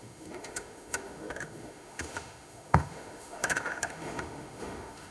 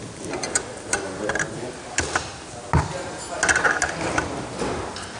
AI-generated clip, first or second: first